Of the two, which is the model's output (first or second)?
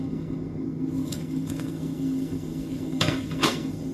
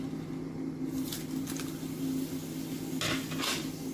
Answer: first